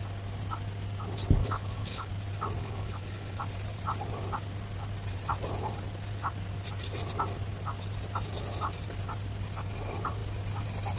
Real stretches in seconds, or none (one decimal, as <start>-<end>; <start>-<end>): 0.0-1.4; 2.1-2.6; 3.4-11.0